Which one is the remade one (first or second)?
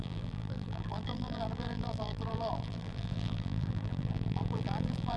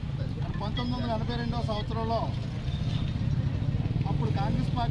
first